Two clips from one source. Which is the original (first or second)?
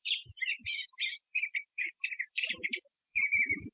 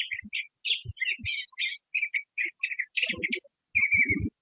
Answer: second